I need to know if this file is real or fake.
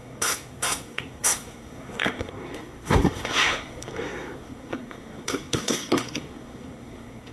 fake